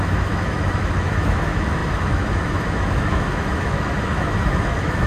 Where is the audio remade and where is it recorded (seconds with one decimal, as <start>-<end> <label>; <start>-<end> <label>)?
0.0-5.1 remade